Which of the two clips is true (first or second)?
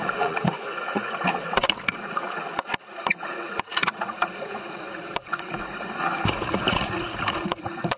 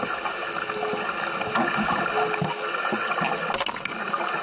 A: second